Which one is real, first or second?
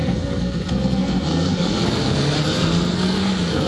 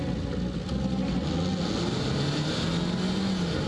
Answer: second